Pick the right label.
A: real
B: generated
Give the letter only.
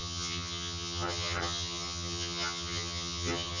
B